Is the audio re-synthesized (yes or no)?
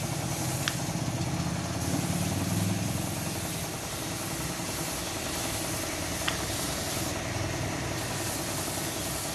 no